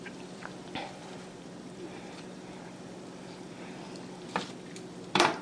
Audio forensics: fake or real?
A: fake